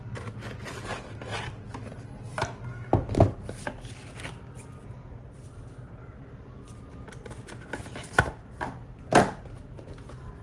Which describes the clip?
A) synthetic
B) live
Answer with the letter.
B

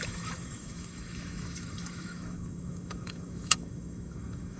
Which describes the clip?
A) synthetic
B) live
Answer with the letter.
A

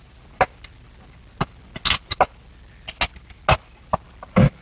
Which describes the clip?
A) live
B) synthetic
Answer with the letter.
A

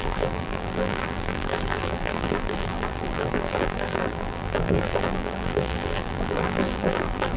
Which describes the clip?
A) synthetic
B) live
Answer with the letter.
A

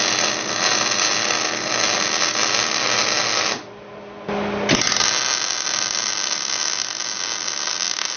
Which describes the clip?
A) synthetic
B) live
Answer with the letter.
B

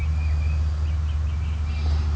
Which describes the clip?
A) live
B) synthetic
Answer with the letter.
A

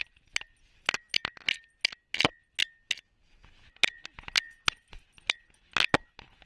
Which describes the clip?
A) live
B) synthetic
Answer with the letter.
A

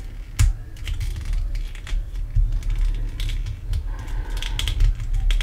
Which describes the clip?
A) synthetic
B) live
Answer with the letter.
B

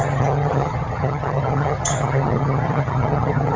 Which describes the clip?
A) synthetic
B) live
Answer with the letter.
A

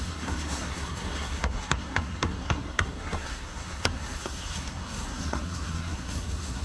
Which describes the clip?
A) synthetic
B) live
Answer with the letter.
A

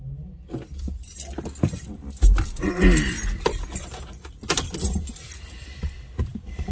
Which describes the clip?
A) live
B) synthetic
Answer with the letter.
A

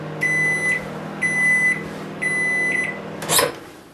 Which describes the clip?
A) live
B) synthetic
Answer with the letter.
A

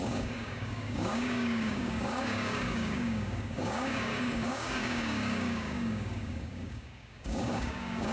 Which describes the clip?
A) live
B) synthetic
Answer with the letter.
B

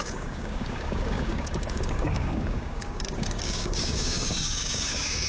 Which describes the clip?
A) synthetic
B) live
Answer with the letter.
A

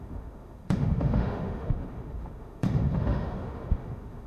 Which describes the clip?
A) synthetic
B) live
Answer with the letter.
A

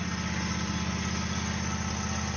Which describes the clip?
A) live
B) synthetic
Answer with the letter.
A